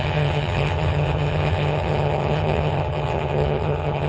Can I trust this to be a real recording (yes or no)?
no